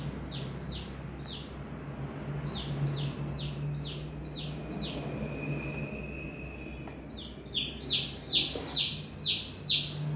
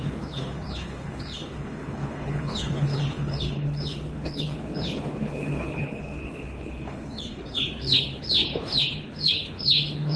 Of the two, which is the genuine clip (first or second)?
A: first